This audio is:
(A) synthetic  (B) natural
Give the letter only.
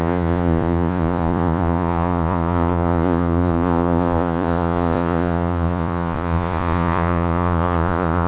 A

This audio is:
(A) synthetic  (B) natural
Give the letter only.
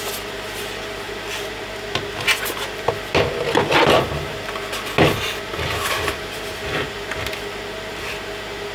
B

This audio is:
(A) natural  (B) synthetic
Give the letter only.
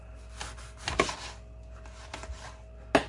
A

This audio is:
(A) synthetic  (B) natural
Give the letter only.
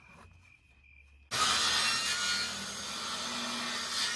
B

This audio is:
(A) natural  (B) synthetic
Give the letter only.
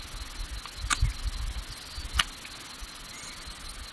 A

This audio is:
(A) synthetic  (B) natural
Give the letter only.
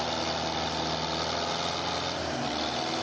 B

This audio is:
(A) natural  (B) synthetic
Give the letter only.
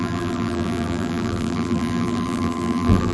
B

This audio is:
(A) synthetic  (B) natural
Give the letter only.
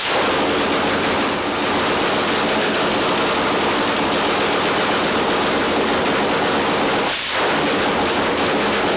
B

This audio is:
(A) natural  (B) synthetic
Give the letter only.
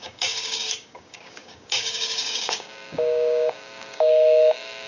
B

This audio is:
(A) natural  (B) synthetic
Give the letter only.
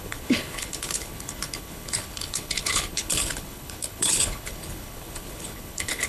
B